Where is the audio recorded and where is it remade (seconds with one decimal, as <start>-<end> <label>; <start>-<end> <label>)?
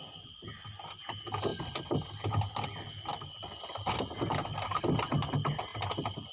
0.0-6.3 recorded